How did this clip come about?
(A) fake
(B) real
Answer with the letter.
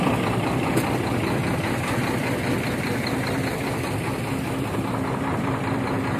A